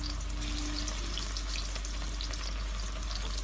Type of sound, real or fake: real